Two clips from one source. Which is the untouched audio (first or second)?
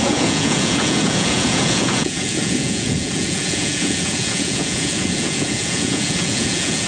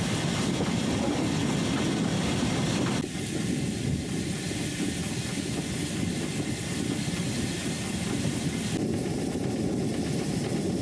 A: second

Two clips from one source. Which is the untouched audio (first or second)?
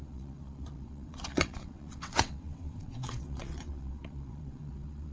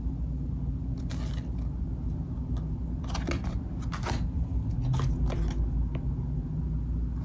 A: second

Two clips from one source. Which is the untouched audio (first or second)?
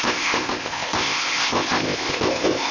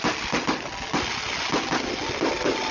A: second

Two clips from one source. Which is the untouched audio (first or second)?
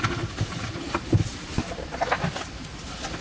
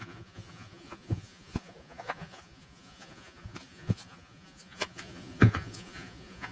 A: first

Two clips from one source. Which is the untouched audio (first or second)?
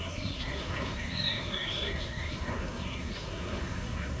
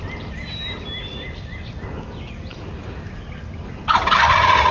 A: second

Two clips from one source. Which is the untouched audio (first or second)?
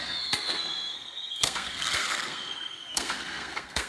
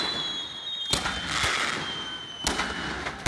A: second